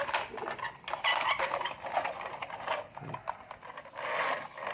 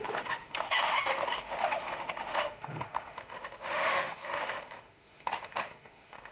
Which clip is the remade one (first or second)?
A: second